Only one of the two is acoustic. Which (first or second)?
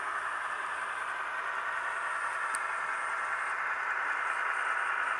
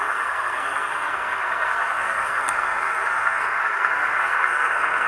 first